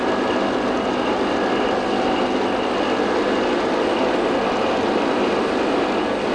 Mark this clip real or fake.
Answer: real